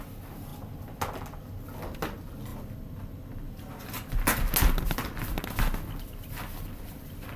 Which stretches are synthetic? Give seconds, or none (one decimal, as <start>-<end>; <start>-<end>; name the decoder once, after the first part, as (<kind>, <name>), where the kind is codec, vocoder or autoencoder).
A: none